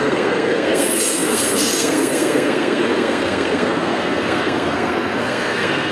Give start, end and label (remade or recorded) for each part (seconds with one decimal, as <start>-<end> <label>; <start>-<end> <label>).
0.0-5.9 remade